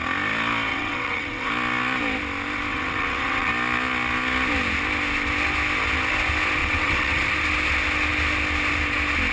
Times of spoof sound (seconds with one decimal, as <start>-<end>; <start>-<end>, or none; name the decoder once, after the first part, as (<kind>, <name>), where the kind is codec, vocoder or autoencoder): 0.7-1.5 (vocoder, WaveNeXt); 2.7-3.5; 6.6-7.2